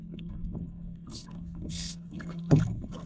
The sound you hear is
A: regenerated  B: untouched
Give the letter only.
A